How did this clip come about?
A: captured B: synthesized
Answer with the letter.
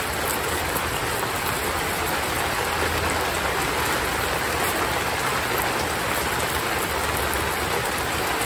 A